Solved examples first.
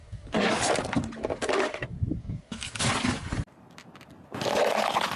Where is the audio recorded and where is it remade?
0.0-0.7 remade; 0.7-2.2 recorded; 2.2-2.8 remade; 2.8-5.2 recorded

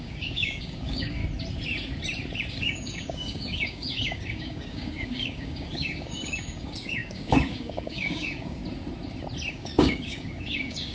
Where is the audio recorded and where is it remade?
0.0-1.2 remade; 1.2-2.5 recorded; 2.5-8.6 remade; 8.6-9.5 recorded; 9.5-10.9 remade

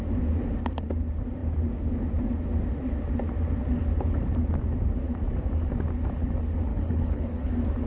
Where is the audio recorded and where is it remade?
0.0-6.7 recorded; 6.7-7.5 remade; 7.5-7.9 recorded

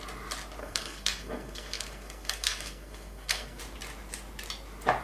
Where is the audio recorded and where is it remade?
0.0-0.6 recorded; 0.6-3.6 remade; 3.6-5.0 recorded

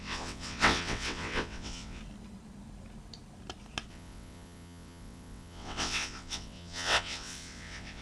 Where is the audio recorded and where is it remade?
0.0-2.0 remade; 2.0-3.9 recorded; 3.9-8.0 remade

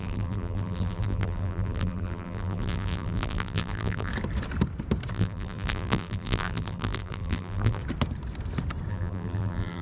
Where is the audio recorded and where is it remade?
0.0-4.1 remade; 4.1-5.1 recorded; 5.1-7.8 remade; 7.8-8.9 recorded; 8.9-9.8 remade

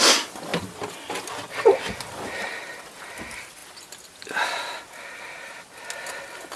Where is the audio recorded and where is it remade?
0.0-6.6 recorded

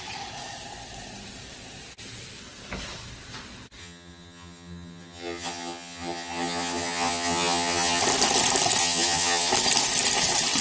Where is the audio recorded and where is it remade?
0.0-3.8 recorded; 3.8-8.0 remade; 8.0-8.8 recorded; 8.8-9.5 remade; 9.5-10.6 recorded